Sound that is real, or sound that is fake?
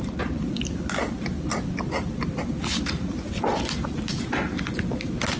real